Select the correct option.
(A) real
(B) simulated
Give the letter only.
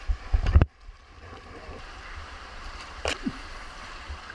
B